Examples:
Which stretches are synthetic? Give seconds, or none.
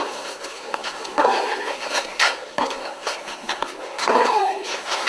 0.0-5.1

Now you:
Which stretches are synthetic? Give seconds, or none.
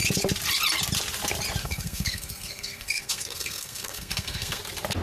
1.6-4.6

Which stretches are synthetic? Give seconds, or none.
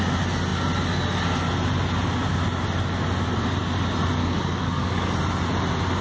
4.2-5.1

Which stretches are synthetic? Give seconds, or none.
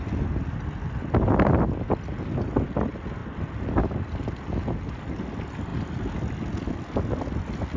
none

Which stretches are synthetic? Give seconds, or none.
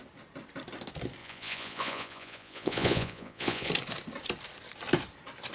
1.2-3.7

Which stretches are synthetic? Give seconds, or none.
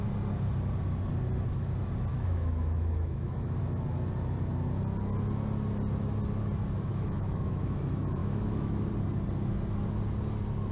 2.1-3.6; 6.9-7.8; 8.2-8.9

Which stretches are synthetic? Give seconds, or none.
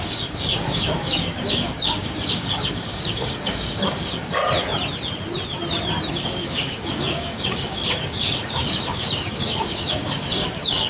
0.0-4.4; 6.1-10.9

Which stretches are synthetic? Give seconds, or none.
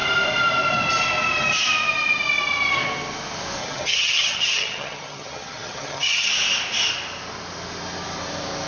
3.6-6.3